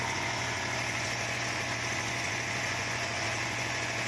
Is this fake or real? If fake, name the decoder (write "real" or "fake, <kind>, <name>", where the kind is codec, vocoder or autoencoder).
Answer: fake, vocoder, Vocos